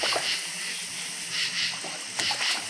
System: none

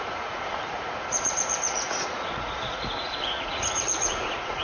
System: vocoder, Vocos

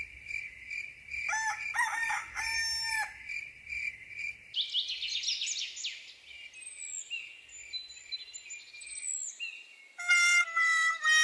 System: none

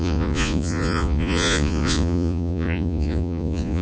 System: vocoder, Vocos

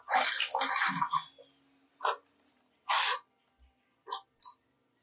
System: none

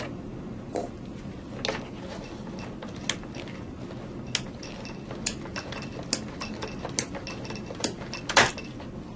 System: none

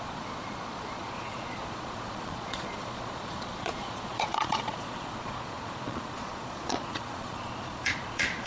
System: vocoder, Vocos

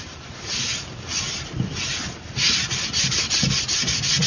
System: none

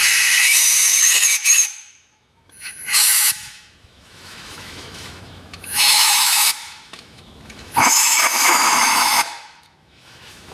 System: autoencoder, DAC-VAE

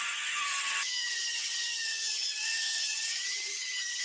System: vocoder, HiFi-GAN